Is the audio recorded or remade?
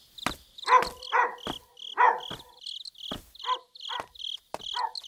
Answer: recorded